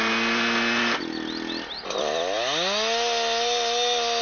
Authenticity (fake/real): real